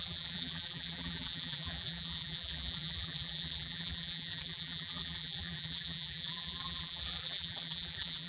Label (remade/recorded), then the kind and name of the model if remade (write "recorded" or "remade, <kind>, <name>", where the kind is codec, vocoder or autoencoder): remade, vocoder, BigVGAN v2